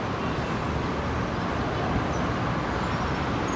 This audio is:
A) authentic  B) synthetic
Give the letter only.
A